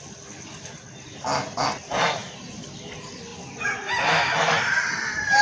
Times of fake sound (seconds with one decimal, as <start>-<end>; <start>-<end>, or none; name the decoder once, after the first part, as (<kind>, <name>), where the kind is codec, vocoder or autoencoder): none